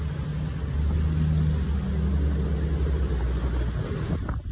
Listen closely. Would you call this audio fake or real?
real